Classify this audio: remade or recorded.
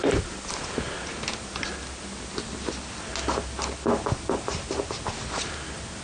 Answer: recorded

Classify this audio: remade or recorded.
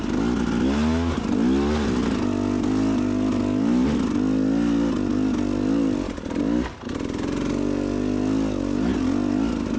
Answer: recorded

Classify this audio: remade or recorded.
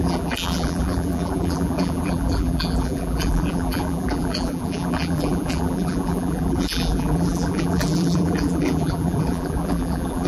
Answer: remade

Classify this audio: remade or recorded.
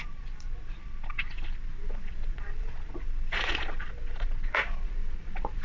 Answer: remade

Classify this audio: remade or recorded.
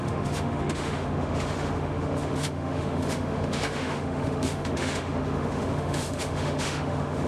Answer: remade